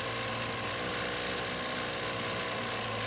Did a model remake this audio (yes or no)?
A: no